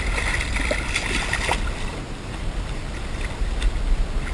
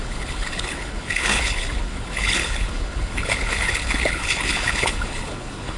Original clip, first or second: first